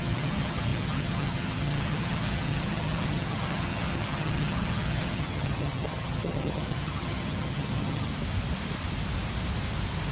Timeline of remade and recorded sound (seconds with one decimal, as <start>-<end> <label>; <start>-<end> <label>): 0.0-8.1 remade; 8.1-10.1 recorded